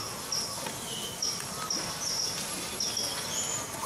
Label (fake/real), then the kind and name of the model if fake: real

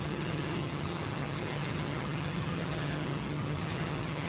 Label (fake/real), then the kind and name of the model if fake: fake, vocoder, HiFi-GAN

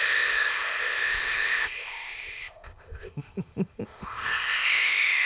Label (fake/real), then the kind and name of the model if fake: fake, codec, ZipCodec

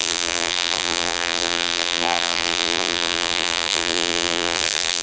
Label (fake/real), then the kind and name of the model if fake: fake, vocoder, BigVGAN v2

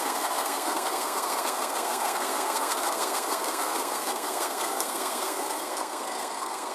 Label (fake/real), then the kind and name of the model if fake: fake, codec, SNAC